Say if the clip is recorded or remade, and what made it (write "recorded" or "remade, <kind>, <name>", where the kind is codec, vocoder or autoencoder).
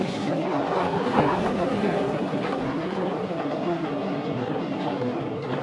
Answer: remade, codec, SNAC